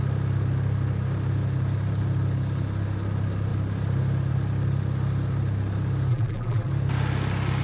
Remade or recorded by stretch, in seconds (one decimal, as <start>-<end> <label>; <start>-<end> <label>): 0.0-6.1 recorded; 6.1-6.7 remade; 6.7-7.6 recorded